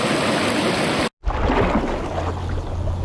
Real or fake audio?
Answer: real